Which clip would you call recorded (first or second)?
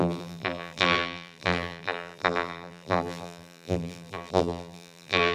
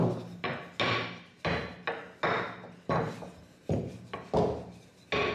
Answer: second